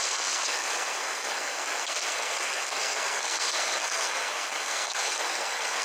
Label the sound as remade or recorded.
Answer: remade